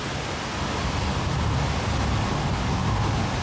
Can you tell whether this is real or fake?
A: real